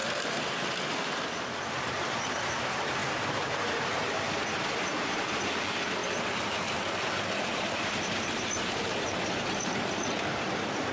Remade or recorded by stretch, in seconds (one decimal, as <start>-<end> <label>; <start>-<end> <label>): 0.0-1.4 recorded; 1.4-3.0 remade; 3.0-3.5 recorded; 3.5-10.9 remade